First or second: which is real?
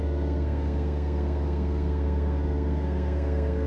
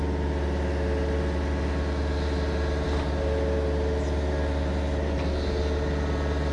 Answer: second